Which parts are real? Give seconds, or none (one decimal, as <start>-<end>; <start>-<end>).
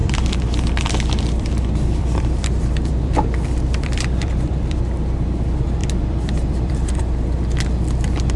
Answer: 4.8-5.8; 7.0-8.4